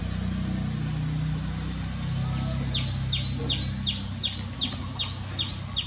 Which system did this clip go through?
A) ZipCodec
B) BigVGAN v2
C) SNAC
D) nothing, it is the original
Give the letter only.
D